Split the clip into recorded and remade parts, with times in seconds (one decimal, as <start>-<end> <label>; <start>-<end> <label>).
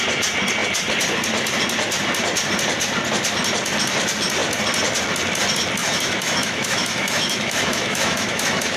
0.0-5.8 recorded; 5.8-8.8 remade